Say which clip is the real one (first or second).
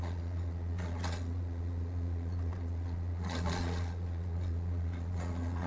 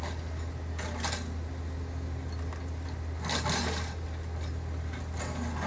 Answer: second